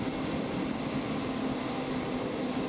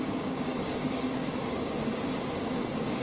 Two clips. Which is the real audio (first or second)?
first